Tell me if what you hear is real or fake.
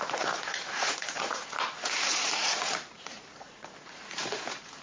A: fake